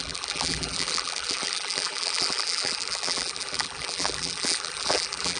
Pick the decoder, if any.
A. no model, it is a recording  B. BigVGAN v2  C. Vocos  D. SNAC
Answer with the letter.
B